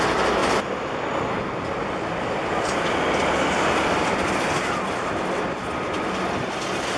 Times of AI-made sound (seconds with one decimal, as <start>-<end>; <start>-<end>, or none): none